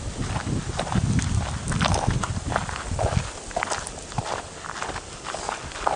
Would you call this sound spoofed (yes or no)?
no